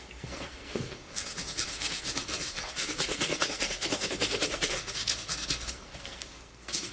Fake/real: fake